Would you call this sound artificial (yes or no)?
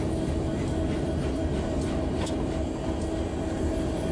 no